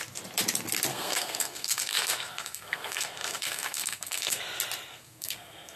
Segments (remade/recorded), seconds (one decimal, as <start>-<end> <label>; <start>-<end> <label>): 0.0-0.9 recorded; 0.9-4.4 remade; 4.4-4.9 recorded; 4.9-5.8 remade

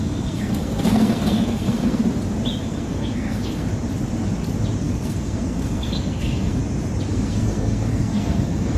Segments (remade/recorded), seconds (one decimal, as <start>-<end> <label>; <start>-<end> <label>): 0.0-2.0 remade; 2.0-2.6 recorded; 2.6-3.7 remade; 3.7-4.8 recorded; 4.8-6.6 remade; 6.6-7.1 recorded; 7.1-8.8 remade

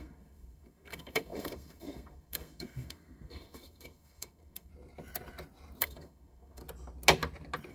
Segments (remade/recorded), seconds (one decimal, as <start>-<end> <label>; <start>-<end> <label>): 0.0-4.7 remade; 4.7-5.8 recorded; 5.8-6.6 remade; 6.6-7.7 recorded

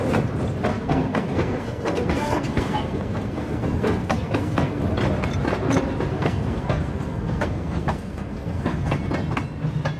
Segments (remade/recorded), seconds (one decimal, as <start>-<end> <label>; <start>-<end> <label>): 0.0-0.7 recorded; 0.7-4.8 remade; 4.8-6.1 recorded; 6.1-9.1 remade; 9.1-10.0 recorded

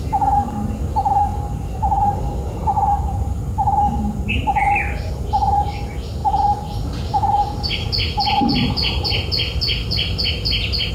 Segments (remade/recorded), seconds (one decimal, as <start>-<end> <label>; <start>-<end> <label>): 0.0-10.9 recorded

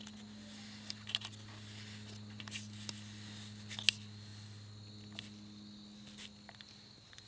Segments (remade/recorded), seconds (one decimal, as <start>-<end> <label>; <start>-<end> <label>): 0.0-7.3 recorded

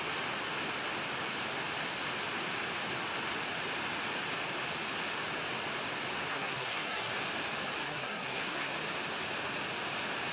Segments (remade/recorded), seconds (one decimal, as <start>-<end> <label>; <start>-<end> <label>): 0.0-6.3 recorded; 6.3-7.1 remade; 7.1-7.8 recorded; 7.8-8.7 remade; 8.7-10.3 recorded

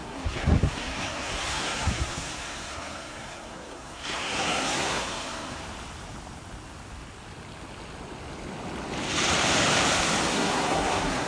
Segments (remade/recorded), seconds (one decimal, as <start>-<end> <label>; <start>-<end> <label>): 0.0-5.6 remade; 5.6-10.3 recorded; 10.3-11.3 remade